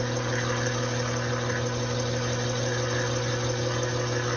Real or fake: real